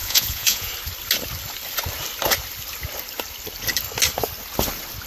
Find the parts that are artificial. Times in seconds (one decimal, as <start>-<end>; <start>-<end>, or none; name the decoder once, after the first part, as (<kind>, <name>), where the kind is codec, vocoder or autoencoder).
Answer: 0.0-0.7 (vocoder, Vocos)